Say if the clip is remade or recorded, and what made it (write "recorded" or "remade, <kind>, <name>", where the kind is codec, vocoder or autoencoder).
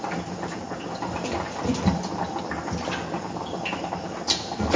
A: recorded